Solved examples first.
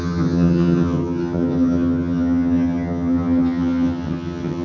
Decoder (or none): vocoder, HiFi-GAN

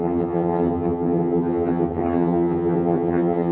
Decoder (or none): vocoder, HiFi-GAN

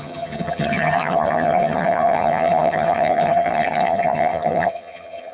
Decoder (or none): vocoder, HiFi-GAN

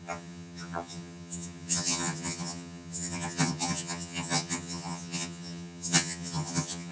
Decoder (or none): vocoder, HiFi-GAN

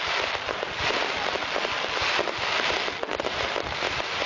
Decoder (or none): none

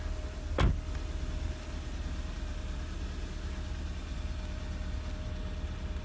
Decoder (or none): none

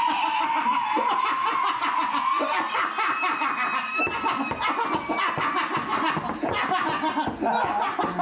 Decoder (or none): none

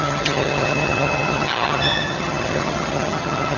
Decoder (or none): vocoder, HiFi-GAN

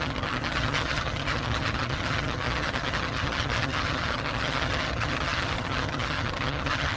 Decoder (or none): vocoder, HiFi-GAN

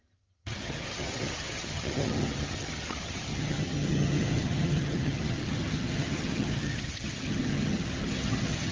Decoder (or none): vocoder, HiFi-GAN